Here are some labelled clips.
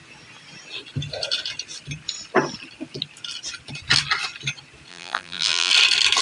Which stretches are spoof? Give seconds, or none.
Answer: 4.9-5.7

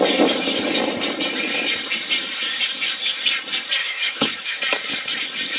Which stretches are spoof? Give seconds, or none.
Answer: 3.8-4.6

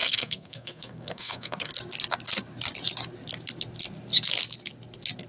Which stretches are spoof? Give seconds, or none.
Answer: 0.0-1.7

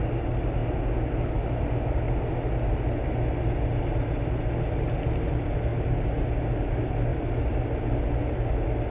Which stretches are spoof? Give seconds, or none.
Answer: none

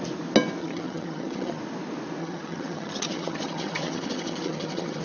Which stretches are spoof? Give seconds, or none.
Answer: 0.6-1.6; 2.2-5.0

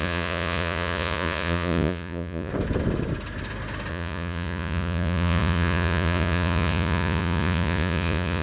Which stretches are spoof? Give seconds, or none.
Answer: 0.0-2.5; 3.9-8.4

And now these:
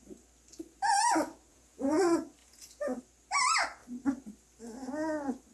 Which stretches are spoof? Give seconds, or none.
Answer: 1.5-2.0; 2.4-3.0